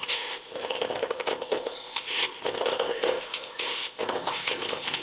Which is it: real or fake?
fake